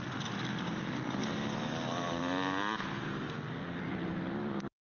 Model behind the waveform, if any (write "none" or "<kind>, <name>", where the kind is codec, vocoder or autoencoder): none